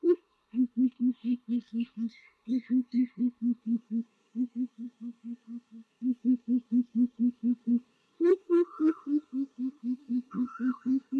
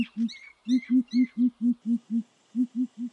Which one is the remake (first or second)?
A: first